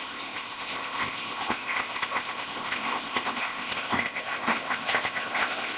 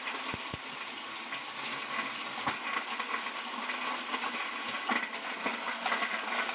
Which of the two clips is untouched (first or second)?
second